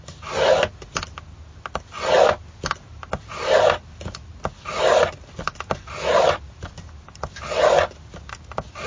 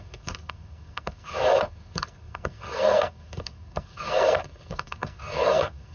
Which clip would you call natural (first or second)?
first